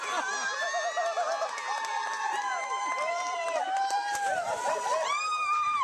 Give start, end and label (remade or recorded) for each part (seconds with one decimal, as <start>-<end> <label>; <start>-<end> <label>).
0.0-1.9 recorded; 1.9-5.8 remade